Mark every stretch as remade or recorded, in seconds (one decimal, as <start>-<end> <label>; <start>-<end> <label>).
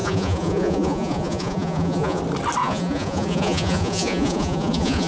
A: 0.0-2.2 remade; 2.2-2.6 recorded; 2.6-5.1 remade